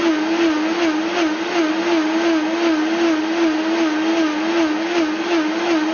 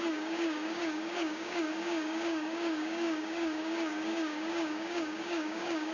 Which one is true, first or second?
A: first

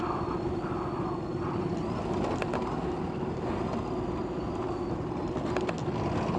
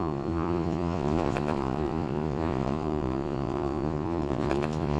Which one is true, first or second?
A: first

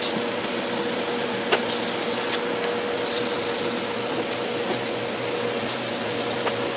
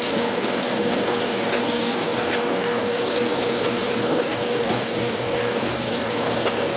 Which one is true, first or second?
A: first